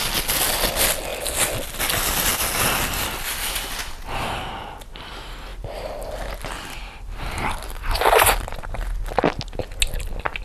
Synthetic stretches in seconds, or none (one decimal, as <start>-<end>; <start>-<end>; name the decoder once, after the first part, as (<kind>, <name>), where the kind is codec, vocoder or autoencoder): none